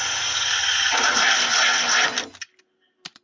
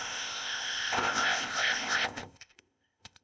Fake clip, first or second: second